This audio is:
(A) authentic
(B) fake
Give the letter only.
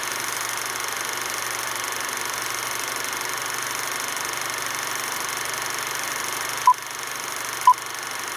A